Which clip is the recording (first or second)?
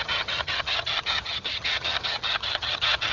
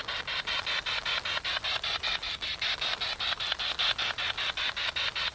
second